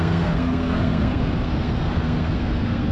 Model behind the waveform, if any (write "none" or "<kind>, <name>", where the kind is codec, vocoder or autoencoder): codec, SNAC